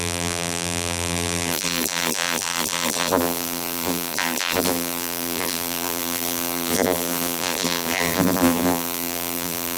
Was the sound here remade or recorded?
remade